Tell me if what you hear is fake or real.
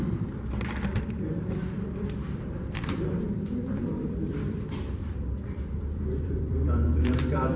fake